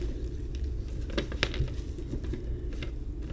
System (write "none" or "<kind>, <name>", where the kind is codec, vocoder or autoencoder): none